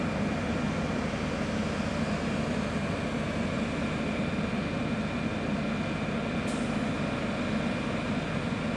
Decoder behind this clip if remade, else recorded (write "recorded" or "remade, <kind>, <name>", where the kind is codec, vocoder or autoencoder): recorded